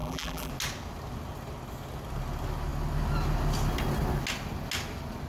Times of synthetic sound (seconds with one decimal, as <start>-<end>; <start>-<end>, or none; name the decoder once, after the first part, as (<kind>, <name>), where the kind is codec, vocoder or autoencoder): 0.0-0.5 (vocoder, BigVGAN v2)